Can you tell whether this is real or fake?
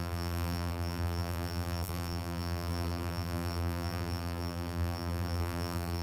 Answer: fake